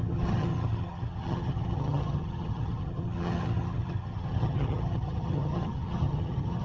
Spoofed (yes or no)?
yes